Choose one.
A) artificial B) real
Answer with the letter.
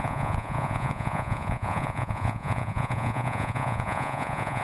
A